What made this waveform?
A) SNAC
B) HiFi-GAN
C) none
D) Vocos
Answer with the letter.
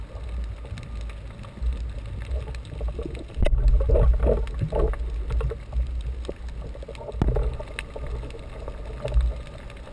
C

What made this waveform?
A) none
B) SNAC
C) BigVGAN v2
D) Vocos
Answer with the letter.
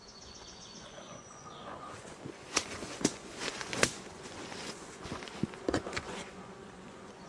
D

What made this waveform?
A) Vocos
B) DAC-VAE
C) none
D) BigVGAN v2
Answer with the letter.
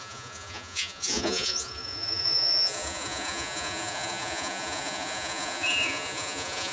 A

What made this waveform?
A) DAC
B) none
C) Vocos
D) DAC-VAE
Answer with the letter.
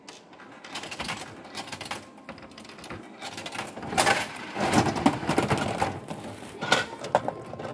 B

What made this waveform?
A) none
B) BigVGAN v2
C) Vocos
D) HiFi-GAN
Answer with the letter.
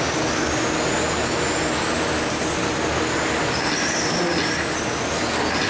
A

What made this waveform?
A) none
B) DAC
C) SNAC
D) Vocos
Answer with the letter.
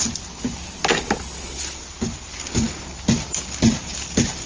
A